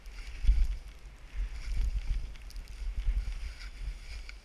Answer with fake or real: real